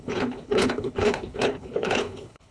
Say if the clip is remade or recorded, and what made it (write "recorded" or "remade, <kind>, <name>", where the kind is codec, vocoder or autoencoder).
remade, codec, HILCodec